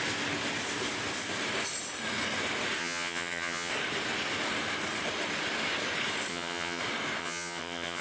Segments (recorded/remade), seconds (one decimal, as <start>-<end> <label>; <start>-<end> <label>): 0.0-2.8 recorded; 2.8-3.7 remade; 3.7-6.3 recorded; 6.3-6.8 remade; 6.8-7.2 recorded; 7.2-8.0 remade